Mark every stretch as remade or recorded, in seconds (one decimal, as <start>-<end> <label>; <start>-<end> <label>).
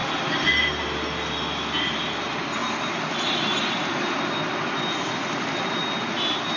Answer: 0.0-6.6 recorded